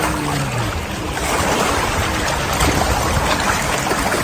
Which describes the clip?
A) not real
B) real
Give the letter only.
B